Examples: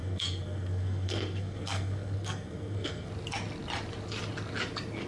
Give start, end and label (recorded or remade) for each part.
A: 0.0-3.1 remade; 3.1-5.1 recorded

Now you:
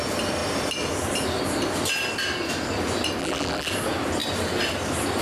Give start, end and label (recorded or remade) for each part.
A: 0.0-3.2 recorded; 3.2-3.7 remade; 3.7-5.2 recorded